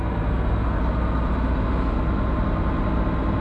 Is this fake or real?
real